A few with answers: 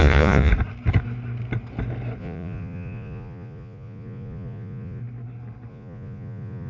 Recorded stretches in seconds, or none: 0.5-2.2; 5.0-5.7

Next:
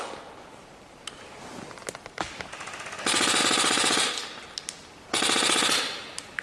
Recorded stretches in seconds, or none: 0.0-6.4

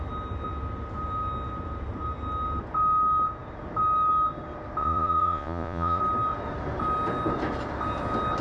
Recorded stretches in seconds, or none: 0.0-4.8; 6.0-8.4

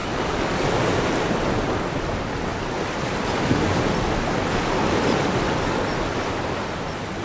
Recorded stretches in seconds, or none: 0.0-7.2

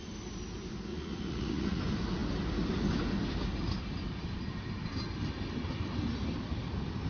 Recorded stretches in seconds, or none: 0.0-0.9; 1.8-7.1

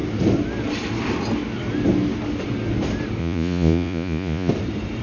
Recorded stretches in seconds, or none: 0.0-3.2; 4.5-5.0